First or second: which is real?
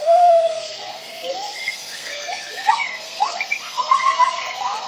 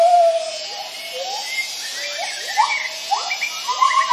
second